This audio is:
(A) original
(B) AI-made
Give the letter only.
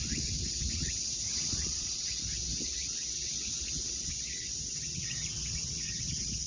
B